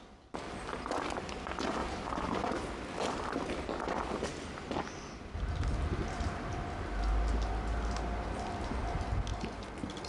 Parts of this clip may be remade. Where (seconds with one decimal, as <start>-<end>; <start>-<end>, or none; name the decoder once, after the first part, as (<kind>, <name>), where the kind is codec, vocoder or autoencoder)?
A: 1.8-2.5 (vocoder, BigVGAN v2); 6.0-6.6